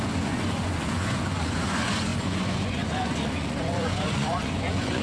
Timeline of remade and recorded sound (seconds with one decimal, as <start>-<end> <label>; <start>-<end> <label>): 0.0-5.0 remade